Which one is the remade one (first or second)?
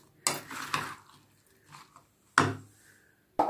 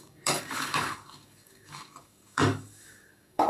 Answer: second